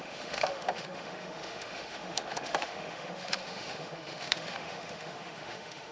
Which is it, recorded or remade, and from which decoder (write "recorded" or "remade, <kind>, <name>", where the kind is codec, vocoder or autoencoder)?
remade, autoencoder, DAC-VAE